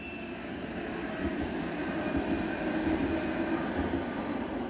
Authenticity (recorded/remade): recorded